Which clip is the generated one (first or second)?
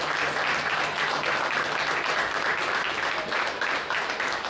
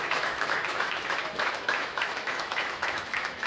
second